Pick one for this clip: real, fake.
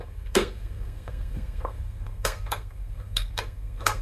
fake